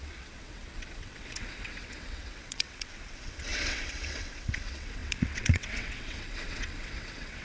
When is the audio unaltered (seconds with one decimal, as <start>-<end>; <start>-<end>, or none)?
none